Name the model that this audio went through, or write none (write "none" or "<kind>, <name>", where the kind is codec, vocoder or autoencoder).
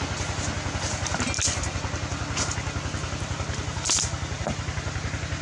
none